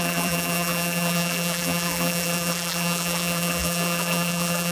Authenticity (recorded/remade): remade